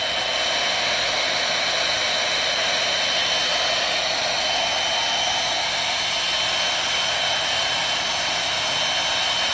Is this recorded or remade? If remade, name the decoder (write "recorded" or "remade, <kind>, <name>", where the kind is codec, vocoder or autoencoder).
recorded